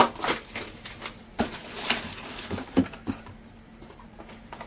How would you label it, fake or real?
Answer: real